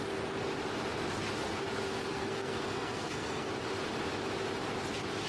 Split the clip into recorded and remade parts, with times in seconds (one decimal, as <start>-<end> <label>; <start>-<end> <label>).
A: 0.0-2.1 recorded; 2.1-3.5 remade; 3.5-5.3 recorded